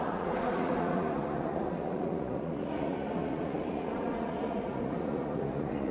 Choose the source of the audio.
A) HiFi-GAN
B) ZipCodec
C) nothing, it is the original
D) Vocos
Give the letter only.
D